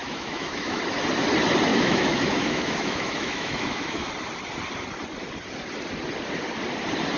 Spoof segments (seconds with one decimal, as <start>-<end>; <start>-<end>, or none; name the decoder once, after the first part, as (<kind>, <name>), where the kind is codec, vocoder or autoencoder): 0.0-0.8 (autoencoder, DAC-VAE); 1.7-4.1